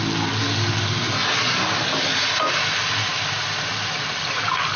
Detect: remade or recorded recorded